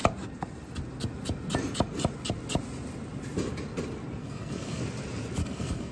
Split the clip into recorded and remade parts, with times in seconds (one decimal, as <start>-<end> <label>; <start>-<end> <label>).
0.0-4.2 recorded; 4.2-4.8 remade; 4.8-5.4 recorded; 5.4-5.9 remade